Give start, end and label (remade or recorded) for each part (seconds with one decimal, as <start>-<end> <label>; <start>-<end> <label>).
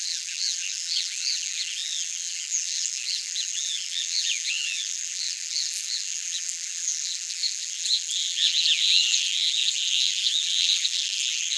0.0-11.6 remade